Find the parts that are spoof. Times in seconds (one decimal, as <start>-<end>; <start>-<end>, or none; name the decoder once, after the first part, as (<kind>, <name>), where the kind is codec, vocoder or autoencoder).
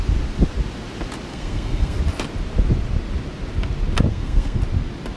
1.3-2.0 (codec, SNAC); 4.1-4.6